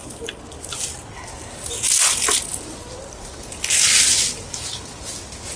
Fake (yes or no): no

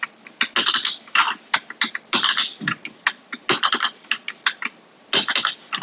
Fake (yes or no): no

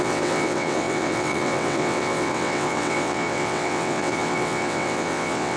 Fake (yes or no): yes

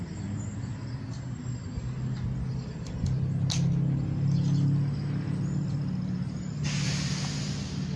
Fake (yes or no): no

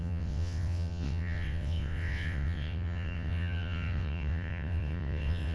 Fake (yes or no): yes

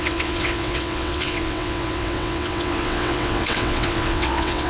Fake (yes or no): yes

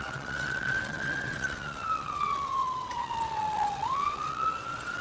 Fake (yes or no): yes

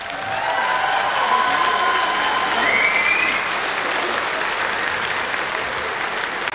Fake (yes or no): no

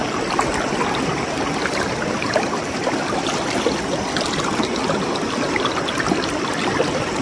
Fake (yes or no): no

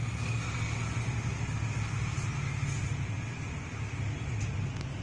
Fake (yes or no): no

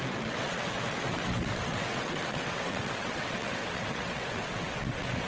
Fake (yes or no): yes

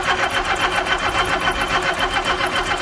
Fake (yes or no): no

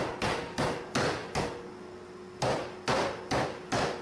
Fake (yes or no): no